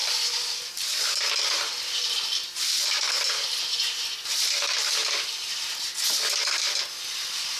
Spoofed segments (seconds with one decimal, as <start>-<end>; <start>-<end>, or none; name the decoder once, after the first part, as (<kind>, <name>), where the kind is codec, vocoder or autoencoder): none